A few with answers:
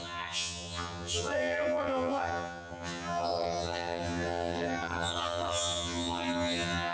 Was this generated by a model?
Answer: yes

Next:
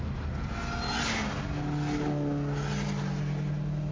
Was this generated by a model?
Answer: no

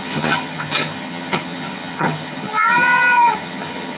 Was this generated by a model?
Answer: yes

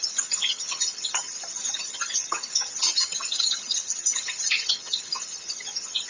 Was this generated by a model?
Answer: yes